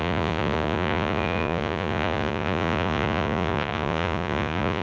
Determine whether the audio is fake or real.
fake